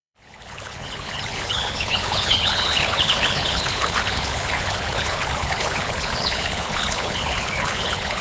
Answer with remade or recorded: remade